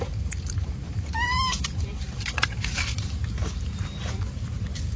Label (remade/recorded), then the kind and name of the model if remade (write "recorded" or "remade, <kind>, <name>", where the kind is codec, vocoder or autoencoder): remade, vocoder, BigVGAN v2